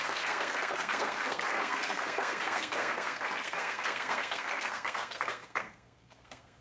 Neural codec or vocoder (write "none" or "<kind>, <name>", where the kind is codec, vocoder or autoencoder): codec, SNAC